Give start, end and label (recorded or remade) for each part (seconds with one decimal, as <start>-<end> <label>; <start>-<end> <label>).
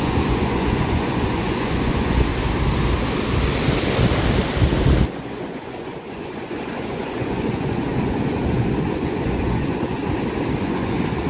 0.0-2.3 remade; 2.3-5.1 recorded; 5.1-10.0 remade; 10.0-10.6 recorded; 10.6-11.3 remade